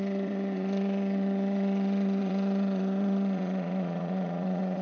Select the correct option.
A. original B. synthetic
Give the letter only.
B